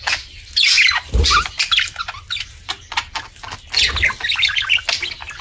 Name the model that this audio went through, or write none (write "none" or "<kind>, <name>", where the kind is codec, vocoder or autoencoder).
none